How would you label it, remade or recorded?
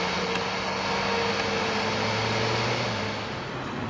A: recorded